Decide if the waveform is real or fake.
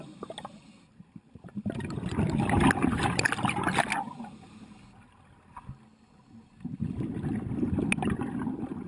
real